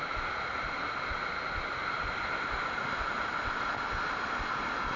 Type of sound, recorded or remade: recorded